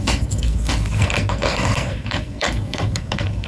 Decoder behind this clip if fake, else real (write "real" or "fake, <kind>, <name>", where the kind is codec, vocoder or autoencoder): fake, codec, SNAC